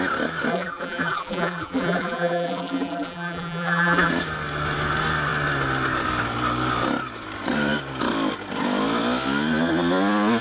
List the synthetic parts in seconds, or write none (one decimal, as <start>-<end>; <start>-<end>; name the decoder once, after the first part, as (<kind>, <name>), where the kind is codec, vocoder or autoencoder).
0.5-4.1 (vocoder, BigVGAN v2)